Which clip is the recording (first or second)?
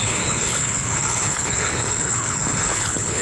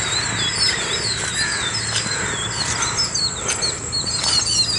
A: second